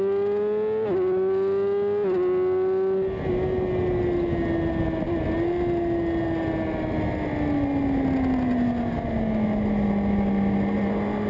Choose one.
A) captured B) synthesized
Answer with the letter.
A